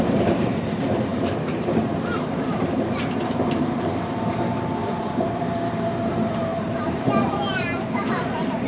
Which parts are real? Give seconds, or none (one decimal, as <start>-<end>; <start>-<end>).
none